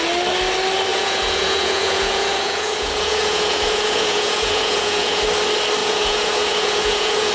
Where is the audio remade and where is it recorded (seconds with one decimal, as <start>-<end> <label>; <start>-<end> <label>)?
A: 0.0-0.9 recorded; 0.9-5.3 remade; 5.3-5.8 recorded; 5.8-7.3 remade